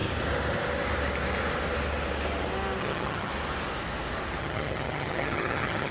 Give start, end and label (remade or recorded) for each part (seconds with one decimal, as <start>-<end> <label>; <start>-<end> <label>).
0.0-2.8 recorded; 2.8-3.3 remade; 3.3-4.4 recorded; 4.4-5.9 remade